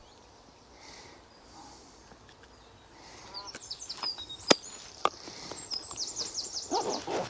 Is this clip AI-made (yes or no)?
yes